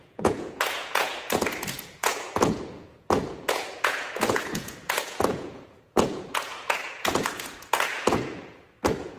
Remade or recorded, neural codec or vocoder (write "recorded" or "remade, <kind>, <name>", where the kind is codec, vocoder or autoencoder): remade, vocoder, Vocos